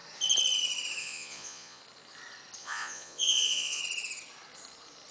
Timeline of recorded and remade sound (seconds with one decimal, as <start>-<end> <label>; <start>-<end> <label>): 0.0-1.0 recorded; 1.0-1.8 remade; 1.8-2.6 recorded; 2.6-3.8 remade; 3.8-5.1 recorded